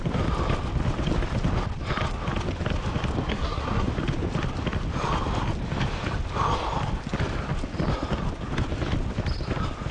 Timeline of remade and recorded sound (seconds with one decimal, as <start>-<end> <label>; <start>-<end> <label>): 0.0-3.3 recorded; 3.3-3.9 remade; 3.9-9.9 recorded